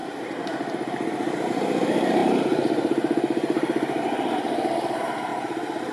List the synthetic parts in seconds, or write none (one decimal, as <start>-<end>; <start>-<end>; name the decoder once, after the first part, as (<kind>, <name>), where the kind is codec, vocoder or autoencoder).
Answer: 0.0-1.5 (vocoder, BigVGAN v2); 2.2-4.0; 5.3-5.9